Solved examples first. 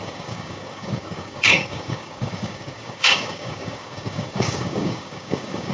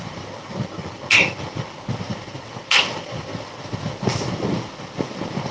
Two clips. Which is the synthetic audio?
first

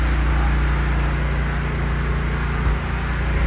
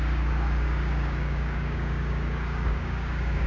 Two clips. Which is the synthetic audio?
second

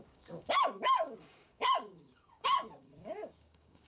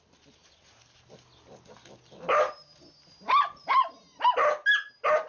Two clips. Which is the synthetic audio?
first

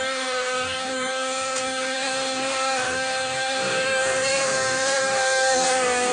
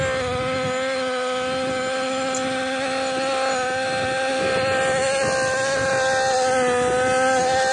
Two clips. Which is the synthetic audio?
first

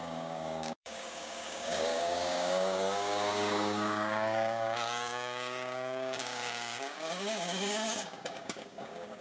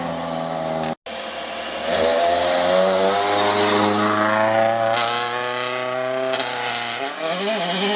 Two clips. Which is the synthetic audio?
first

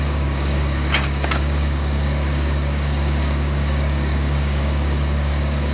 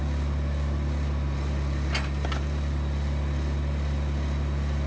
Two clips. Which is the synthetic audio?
first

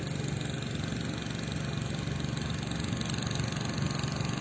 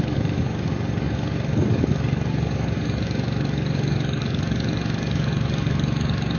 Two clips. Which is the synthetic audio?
second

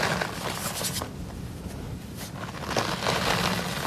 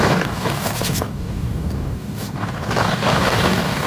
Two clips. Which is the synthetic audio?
second